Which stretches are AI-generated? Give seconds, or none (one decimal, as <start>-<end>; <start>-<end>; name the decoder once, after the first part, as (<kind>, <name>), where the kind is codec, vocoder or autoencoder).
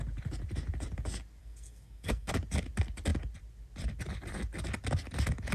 1.4-2.3 (codec, SNAC)